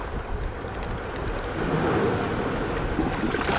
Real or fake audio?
real